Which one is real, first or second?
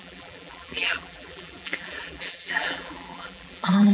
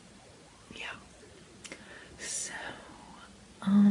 second